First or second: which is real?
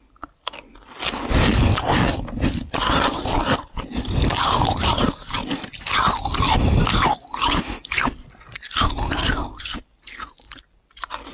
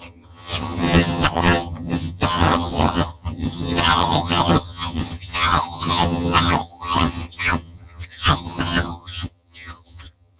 first